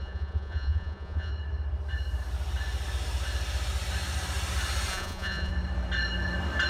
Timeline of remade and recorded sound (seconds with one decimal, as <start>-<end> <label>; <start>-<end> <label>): 0.0-1.3 remade; 1.3-4.9 recorded; 4.9-5.5 remade; 5.5-6.7 recorded